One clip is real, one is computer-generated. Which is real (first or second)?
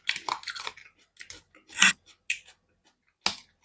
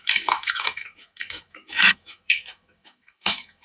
first